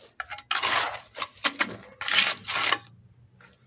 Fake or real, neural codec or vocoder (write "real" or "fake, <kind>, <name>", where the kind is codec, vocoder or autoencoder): real